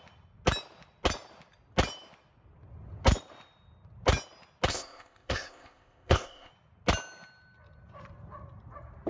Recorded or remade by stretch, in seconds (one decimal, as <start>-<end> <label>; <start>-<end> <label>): 0.0-4.7 recorded; 4.7-6.5 remade; 6.5-9.1 recorded